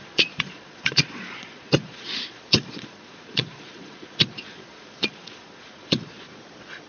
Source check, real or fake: fake